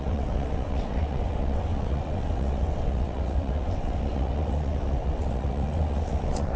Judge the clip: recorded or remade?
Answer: remade